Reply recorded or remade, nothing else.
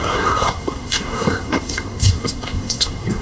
remade